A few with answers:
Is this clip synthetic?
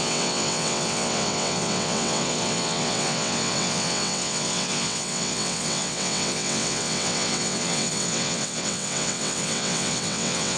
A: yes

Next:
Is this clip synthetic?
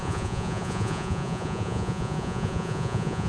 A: yes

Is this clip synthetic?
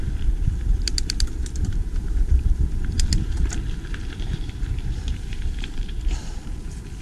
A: yes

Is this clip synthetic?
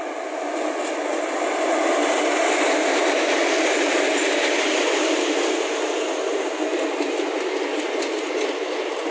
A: no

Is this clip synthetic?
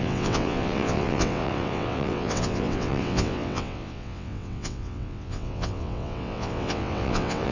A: yes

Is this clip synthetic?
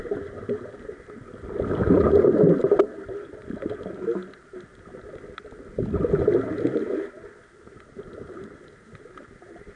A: no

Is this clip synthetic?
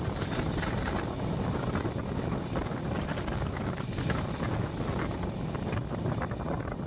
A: no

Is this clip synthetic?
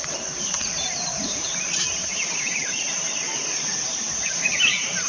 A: yes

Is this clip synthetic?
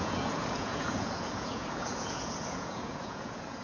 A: yes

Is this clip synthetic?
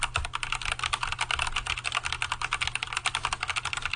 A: no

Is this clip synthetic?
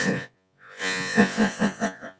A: yes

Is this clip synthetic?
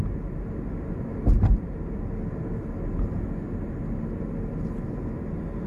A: no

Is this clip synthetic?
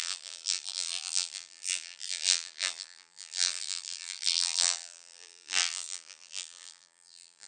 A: yes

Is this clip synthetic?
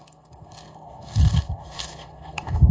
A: yes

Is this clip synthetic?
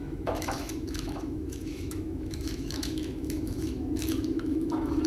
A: yes